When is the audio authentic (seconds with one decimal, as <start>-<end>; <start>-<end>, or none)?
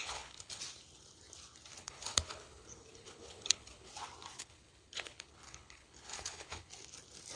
0.6-1.8; 3.9-4.4; 6.7-7.4